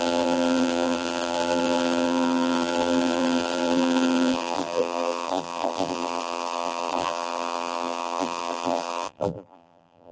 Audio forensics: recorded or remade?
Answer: remade